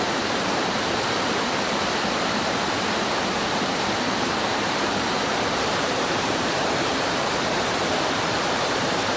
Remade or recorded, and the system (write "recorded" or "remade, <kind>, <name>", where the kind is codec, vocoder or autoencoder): remade, vocoder, BigVGAN v2